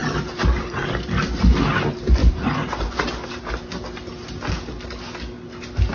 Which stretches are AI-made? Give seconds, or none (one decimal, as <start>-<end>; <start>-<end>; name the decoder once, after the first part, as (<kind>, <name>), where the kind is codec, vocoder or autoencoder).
0.0-0.8 (vocoder, BigVGAN v2); 2.2-3.1